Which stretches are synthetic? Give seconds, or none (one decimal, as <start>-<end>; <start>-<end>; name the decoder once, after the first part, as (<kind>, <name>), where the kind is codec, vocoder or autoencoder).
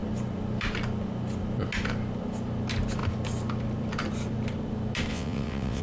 5.1-5.8 (vocoder, WaveNeXt)